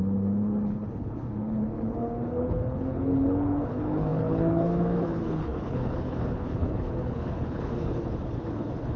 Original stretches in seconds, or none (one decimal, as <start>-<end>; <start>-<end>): none